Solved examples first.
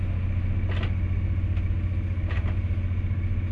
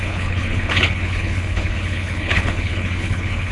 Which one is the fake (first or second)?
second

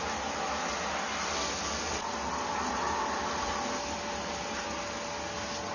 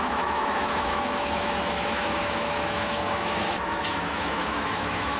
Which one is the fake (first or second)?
second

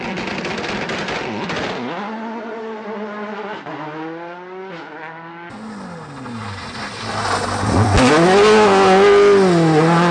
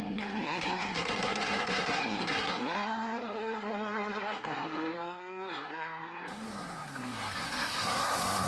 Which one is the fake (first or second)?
second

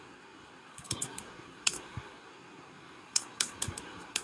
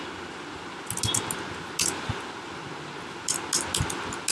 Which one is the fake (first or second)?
first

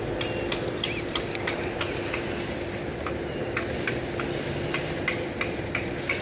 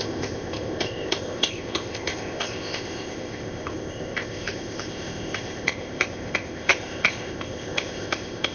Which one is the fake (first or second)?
second